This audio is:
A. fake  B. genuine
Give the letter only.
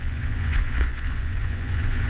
A